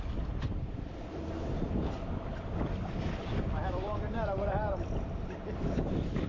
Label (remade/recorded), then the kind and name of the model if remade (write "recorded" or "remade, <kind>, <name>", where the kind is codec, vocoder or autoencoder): recorded